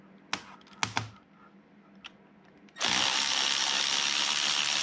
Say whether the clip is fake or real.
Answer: real